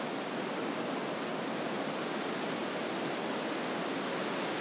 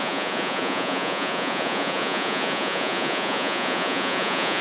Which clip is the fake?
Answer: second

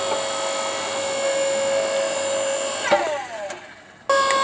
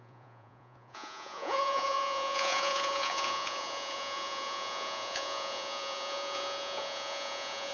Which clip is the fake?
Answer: second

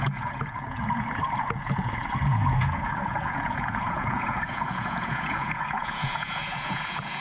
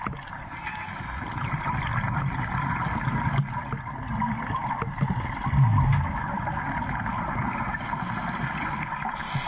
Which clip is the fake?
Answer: first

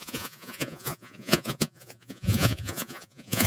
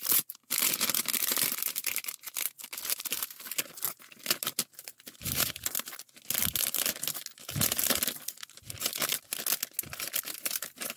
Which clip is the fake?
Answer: first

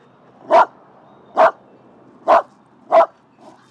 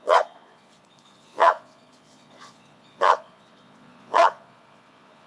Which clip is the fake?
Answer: second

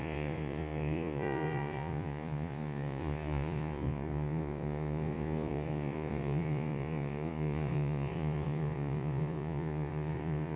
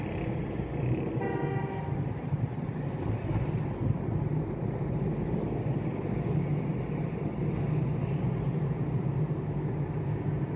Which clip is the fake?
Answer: first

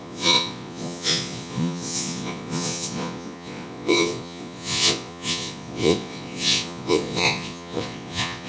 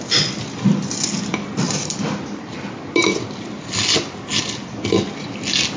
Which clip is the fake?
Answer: first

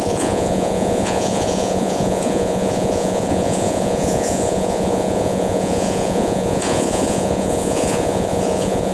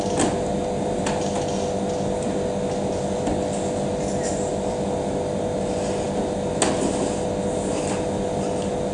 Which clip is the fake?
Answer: first